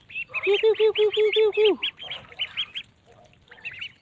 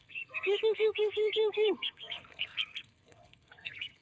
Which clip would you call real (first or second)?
first